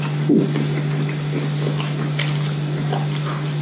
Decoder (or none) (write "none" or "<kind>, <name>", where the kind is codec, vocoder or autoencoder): none